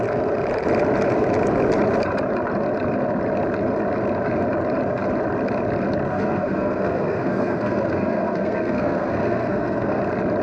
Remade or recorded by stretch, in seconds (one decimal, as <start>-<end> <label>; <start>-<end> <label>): 0.0-6.1 recorded; 6.1-10.0 remade; 10.0-10.4 recorded